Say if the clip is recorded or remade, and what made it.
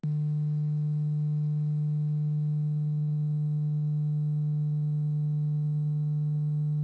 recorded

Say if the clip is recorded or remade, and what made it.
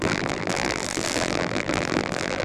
remade, vocoder, BigVGAN v2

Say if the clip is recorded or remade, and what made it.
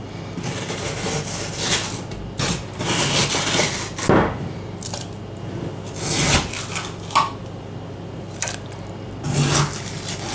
recorded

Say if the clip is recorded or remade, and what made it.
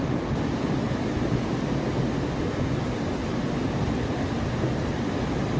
recorded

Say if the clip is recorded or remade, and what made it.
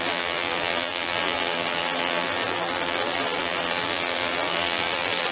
remade, vocoder, BigVGAN v2